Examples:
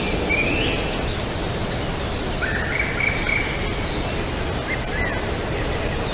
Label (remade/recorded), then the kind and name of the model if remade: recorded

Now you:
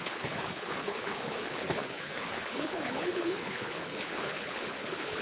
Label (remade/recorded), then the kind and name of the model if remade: remade, codec, HILCodec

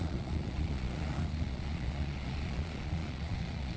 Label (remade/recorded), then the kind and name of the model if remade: remade, vocoder, Vocos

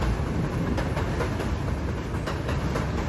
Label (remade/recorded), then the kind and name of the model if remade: recorded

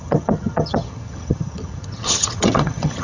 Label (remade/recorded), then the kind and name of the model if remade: remade, vocoder, HiFi-GAN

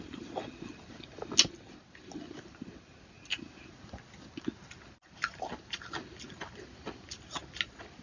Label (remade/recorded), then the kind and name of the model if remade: recorded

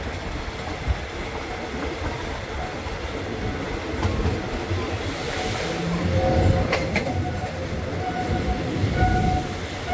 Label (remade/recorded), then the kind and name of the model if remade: recorded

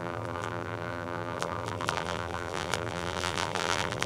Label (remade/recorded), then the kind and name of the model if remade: remade, vocoder, BigVGAN v2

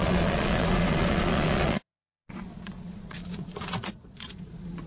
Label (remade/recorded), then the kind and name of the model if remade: remade, vocoder, Vocos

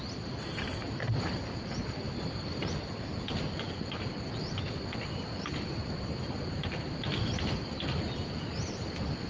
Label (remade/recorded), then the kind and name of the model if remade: recorded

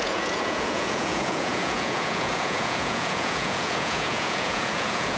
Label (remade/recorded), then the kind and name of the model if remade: remade, vocoder, Vocos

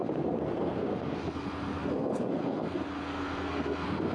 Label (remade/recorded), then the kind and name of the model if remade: remade, codec, SNAC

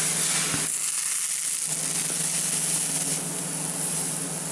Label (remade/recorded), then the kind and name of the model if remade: recorded